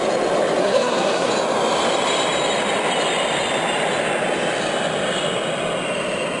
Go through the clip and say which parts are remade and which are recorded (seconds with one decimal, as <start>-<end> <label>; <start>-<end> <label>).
0.0-0.6 recorded; 0.6-1.3 remade; 1.3-6.4 recorded